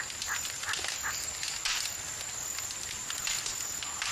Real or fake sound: real